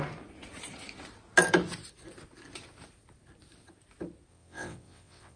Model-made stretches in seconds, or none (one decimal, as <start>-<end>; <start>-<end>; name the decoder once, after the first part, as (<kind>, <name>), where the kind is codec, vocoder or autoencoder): 4.3-5.4 (vocoder, WaveNeXt)